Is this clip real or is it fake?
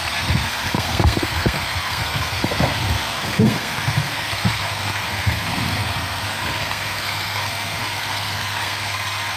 fake